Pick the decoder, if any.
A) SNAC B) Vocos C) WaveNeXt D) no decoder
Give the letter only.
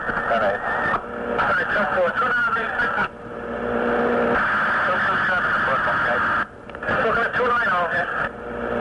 D